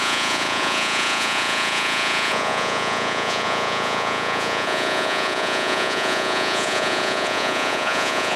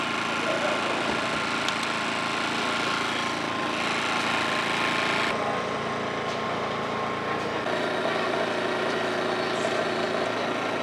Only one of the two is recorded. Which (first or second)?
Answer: second